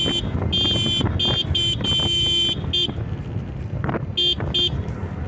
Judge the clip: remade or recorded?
recorded